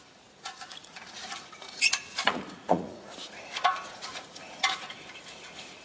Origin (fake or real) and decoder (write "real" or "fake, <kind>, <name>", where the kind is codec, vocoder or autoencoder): fake, vocoder, Vocos